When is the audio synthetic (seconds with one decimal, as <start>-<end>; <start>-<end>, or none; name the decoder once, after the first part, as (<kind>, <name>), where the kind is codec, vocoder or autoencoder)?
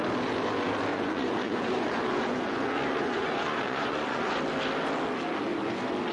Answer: 0.9-4.4 (vocoder, Vocos)